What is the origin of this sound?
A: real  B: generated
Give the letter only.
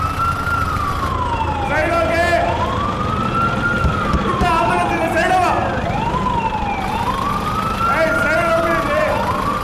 A